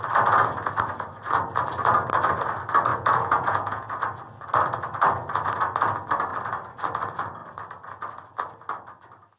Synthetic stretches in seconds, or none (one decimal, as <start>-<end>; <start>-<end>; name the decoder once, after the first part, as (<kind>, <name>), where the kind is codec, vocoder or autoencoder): 2.9-4.0 (vocoder, Vocos)